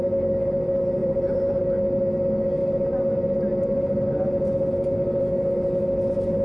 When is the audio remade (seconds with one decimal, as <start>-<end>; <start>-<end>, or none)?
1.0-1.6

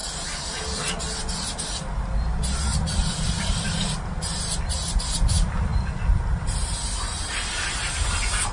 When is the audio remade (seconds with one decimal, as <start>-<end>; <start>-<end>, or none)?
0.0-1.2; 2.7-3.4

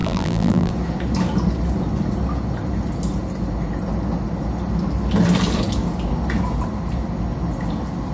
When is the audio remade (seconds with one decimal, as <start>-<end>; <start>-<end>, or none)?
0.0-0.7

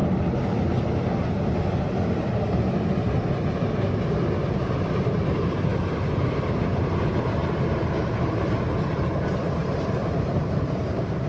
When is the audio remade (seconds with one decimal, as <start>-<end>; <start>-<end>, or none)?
4.4-7.4; 8.0-11.3